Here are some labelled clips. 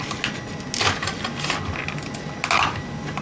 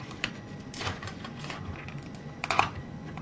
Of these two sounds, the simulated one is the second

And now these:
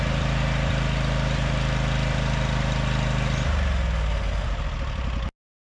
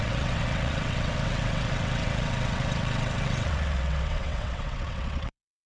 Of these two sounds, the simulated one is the second